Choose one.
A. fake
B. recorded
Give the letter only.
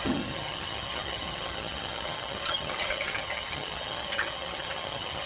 A